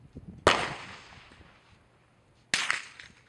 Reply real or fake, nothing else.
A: real